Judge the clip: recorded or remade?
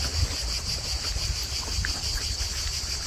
recorded